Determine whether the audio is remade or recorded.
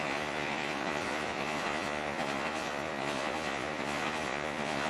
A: remade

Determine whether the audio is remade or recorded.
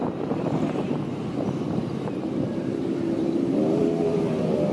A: remade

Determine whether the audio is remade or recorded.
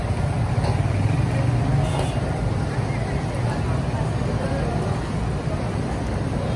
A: recorded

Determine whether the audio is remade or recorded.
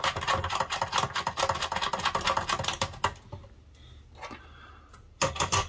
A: recorded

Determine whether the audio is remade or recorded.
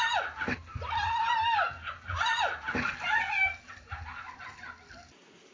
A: recorded